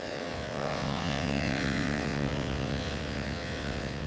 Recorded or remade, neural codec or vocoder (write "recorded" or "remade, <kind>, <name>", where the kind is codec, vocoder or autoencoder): remade, vocoder, WaveNeXt